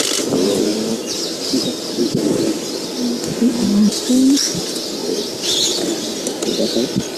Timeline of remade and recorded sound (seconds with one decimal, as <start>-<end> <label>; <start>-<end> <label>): 0.0-0.7 recorded; 0.7-2.5 remade; 2.5-5.0 recorded; 5.0-5.6 remade; 5.6-7.2 recorded